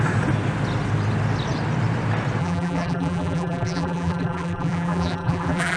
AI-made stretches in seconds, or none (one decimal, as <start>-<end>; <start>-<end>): 2.4-5.8